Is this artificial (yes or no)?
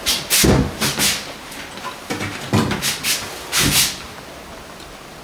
no